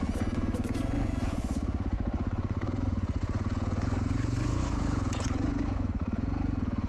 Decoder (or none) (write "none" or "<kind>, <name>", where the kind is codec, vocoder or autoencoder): vocoder, Vocos